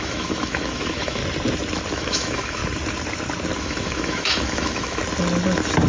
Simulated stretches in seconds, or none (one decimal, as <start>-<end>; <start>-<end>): 0.0-1.2; 1.9-2.6; 3.6-5.0